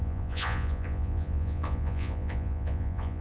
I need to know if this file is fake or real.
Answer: fake